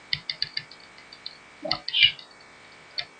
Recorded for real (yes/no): yes